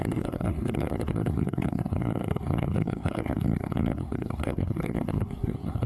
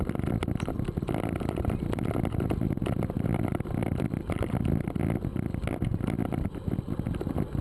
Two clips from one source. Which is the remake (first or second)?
first